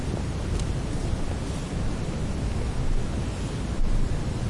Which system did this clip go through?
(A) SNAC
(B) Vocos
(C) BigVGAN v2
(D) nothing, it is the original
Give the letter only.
D